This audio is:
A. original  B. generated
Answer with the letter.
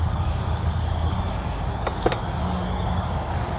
B